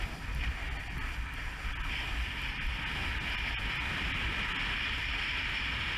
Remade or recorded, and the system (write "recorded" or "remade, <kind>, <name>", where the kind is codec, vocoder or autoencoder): recorded